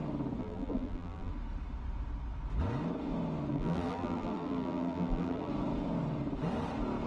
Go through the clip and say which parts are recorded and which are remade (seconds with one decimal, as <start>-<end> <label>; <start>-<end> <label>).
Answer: 0.0-0.4 recorded; 0.4-1.3 remade; 1.3-3.5 recorded; 3.5-5.5 remade; 5.5-7.1 recorded